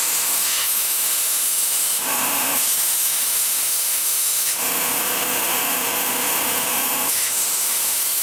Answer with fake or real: fake